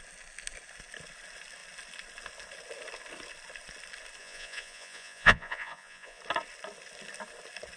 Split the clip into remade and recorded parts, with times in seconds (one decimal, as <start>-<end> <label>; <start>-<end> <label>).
0.0-4.2 recorded; 4.2-6.2 remade; 6.2-7.8 recorded